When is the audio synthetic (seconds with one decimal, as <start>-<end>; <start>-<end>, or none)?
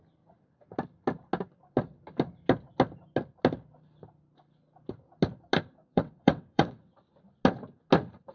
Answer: 5.8-6.9